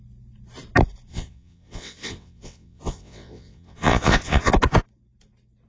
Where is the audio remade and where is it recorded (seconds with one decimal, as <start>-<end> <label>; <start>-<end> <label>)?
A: 0.0-1.1 recorded; 1.1-4.5 remade; 4.5-5.7 recorded

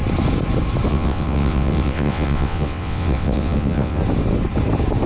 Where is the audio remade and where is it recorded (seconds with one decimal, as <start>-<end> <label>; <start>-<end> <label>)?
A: 0.0-0.9 recorded; 0.9-4.0 remade; 4.0-5.1 recorded

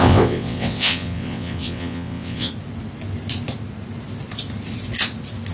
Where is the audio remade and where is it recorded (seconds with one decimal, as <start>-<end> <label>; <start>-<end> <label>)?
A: 0.0-2.5 remade; 2.5-5.5 recorded

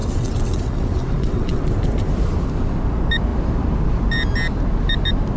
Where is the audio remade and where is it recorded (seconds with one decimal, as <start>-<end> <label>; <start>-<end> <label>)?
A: 0.0-1.6 remade; 1.6-5.4 recorded

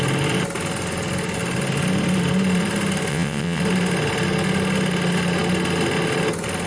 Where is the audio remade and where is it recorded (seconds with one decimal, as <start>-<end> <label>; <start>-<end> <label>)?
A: 0.0-3.1 recorded; 3.1-3.6 remade; 3.6-6.7 recorded

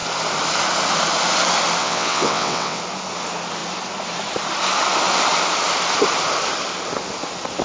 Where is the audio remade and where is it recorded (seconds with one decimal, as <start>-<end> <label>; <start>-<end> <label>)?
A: 0.0-1.8 recorded; 1.8-2.8 remade; 2.8-7.6 recorded

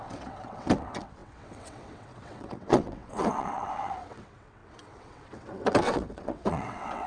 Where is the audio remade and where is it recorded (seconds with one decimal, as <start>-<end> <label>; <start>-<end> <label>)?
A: 0.0-7.1 remade

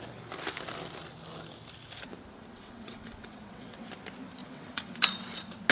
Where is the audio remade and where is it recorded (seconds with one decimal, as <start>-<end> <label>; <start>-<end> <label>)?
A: 0.0-2.5 recorded; 2.5-3.9 remade; 3.9-4.4 recorded; 4.4-4.9 remade; 4.9-5.7 recorded